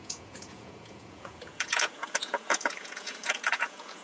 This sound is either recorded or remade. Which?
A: remade